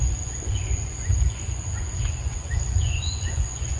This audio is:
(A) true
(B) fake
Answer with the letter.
B